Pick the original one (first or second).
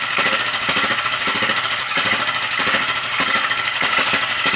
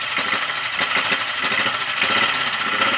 second